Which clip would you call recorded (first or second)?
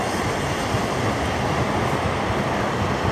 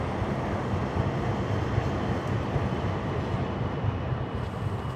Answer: second